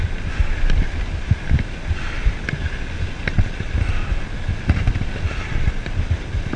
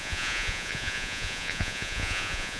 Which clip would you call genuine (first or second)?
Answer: first